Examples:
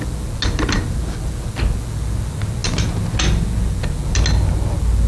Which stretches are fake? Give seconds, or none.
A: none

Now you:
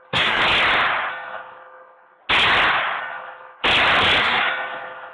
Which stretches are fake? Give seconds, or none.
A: 0.0-0.4 (codec, SNAC); 1.1-2.2; 3.0-3.6; 4.2-5.1

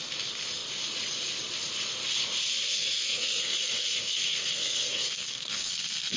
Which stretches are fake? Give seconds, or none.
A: 2.5-6.2 (codec, SNAC)